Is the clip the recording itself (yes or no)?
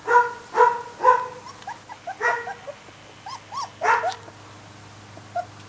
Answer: yes